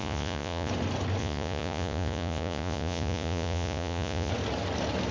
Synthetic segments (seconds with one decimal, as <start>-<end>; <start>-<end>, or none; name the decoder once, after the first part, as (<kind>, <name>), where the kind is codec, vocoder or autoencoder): 0.0-0.7 (vocoder, Vocos); 1.2-4.3